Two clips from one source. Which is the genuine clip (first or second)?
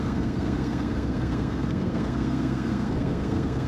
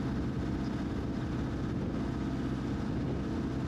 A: second